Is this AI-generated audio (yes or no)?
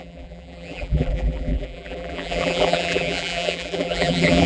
yes